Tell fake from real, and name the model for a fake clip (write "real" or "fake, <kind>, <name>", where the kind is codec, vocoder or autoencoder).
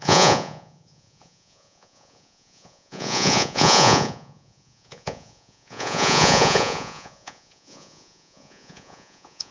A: fake, vocoder, Vocos